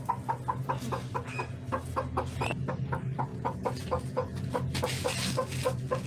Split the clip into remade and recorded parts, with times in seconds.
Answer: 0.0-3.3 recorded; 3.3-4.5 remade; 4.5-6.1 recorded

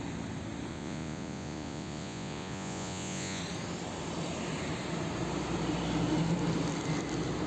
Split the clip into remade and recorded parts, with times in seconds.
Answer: 0.0-0.7 recorded; 0.7-3.4 remade; 3.4-7.5 recorded

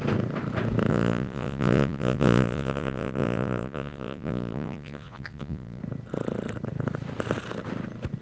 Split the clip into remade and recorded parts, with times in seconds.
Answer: 0.0-0.9 recorded; 0.9-5.8 remade; 5.8-8.2 recorded

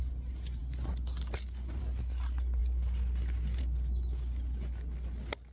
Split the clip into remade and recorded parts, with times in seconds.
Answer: 0.0-5.5 recorded

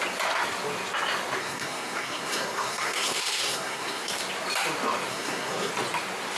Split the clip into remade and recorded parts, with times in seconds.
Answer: 0.0-1.4 recorded; 1.4-4.1 remade; 4.1-5.1 recorded; 5.1-5.7 remade; 5.7-6.4 recorded

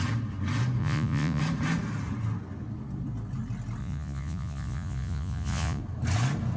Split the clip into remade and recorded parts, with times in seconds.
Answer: 0.0-0.8 recorded; 0.8-1.4 remade; 1.4-3.8 recorded; 3.8-5.8 remade; 5.8-6.6 recorded

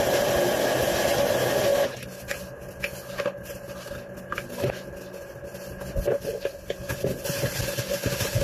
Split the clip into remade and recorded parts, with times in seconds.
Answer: 0.0-8.4 recorded

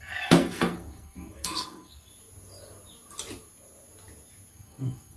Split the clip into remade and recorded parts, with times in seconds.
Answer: 0.0-2.1 remade; 2.1-4.5 recorded; 4.5-5.2 remade